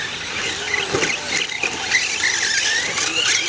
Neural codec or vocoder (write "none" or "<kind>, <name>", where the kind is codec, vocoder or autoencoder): none